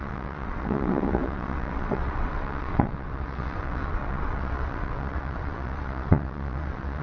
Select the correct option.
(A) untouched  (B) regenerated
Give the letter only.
B